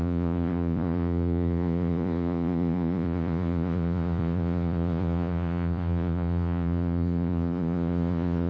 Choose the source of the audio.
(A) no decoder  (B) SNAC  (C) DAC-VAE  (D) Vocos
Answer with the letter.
D